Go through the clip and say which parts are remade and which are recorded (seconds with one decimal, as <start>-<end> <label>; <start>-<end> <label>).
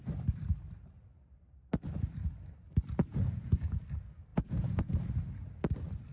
0.0-3.1 recorded; 3.1-3.6 remade; 3.6-4.3 recorded; 4.3-4.9 remade; 4.9-6.1 recorded